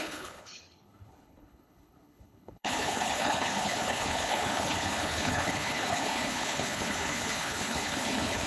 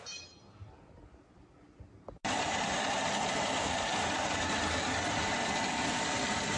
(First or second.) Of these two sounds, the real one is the second